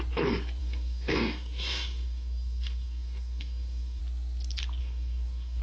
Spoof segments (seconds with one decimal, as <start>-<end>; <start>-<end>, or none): 0.6-4.0; 4.8-5.6